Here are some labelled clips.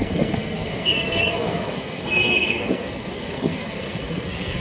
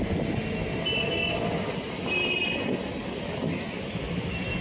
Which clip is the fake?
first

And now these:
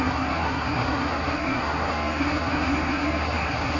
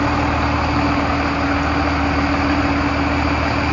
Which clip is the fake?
first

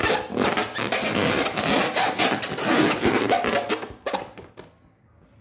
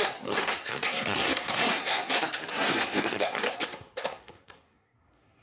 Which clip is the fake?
second